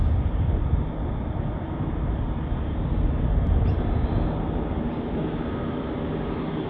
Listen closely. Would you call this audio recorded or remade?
recorded